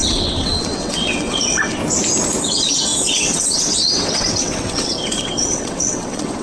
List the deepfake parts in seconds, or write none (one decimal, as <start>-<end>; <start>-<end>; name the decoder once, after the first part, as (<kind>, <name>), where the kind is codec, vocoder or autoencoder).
0.0-1.8 (vocoder, WaveNeXt); 2.4-6.4